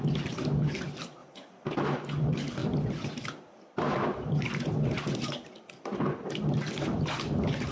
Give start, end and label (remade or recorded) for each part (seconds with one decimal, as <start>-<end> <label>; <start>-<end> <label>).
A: 0.0-7.7 recorded

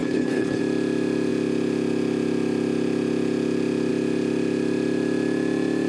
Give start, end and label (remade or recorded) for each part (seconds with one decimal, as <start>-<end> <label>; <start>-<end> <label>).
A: 0.0-0.6 remade; 0.6-5.9 recorded

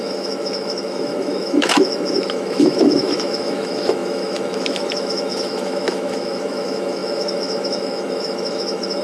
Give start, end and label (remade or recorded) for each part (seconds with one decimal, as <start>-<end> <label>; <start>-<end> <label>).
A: 0.0-9.0 remade

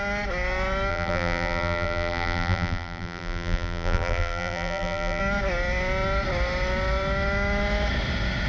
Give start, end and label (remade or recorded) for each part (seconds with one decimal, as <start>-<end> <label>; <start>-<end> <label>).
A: 0.0-0.9 recorded; 0.9-5.2 remade; 5.2-8.5 recorded

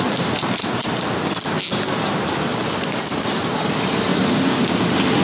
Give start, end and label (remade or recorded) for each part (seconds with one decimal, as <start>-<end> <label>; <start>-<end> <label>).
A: 0.0-5.2 recorded

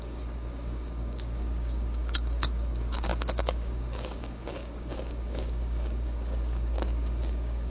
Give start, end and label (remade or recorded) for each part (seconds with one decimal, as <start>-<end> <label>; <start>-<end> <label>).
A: 0.0-7.7 remade

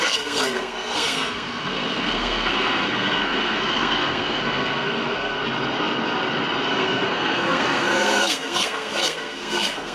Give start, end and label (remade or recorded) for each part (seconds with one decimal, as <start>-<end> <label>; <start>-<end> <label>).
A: 0.0-5.4 remade; 5.4-6.7 recorded; 6.7-9.9 remade

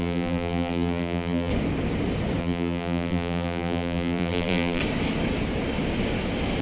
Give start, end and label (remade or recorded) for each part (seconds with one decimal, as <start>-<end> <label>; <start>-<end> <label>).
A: 0.0-1.5 remade; 1.5-2.4 recorded; 2.4-4.8 remade; 4.8-6.6 recorded